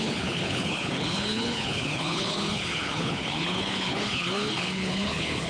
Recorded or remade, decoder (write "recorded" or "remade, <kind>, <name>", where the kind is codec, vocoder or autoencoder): remade, codec, HILCodec